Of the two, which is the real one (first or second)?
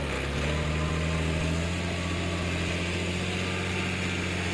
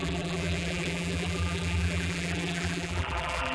first